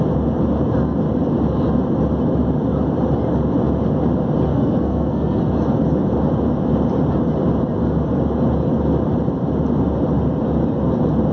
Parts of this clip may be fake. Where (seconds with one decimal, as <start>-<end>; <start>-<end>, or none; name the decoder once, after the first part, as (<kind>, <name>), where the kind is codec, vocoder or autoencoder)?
4.5-5.4 (codec, SNAC)